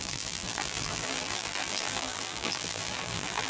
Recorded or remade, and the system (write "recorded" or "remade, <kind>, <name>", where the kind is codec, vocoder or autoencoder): remade, vocoder, BigVGAN v2